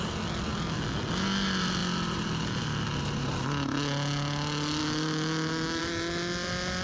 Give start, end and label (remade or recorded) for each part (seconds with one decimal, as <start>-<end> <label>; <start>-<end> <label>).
0.0-4.8 recorded; 4.8-5.8 remade; 5.8-6.8 recorded